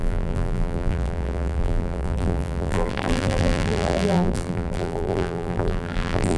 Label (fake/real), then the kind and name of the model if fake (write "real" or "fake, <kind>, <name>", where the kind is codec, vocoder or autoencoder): fake, vocoder, BigVGAN v2